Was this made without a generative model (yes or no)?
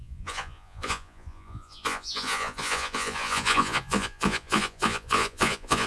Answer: no